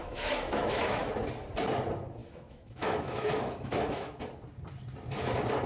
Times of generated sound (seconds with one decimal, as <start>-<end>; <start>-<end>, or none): 0.0-1.1; 2.2-4.2